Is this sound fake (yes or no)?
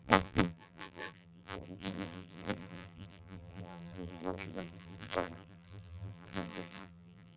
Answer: yes